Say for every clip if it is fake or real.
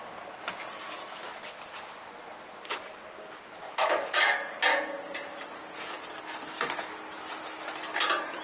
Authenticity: real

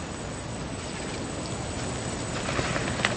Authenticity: real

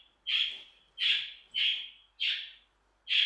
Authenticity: real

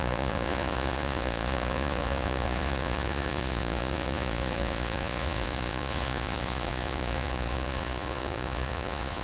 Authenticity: fake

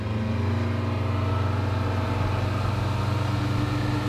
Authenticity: real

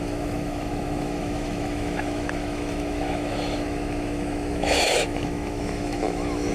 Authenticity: fake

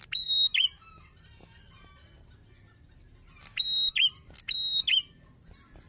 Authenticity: real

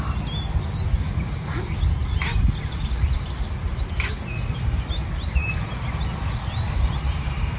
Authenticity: real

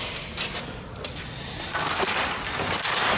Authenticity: fake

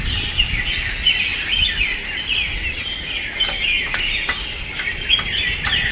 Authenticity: real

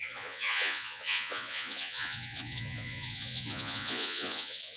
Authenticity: fake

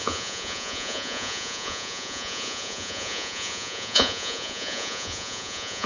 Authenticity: fake